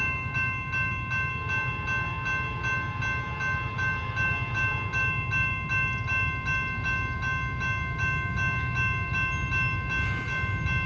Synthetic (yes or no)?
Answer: no